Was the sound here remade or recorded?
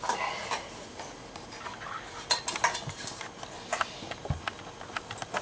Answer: recorded